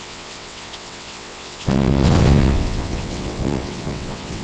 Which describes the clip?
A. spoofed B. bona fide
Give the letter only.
A